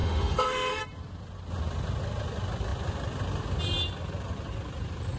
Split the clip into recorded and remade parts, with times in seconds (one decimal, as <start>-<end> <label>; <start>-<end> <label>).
0.0-0.8 remade; 0.8-5.2 recorded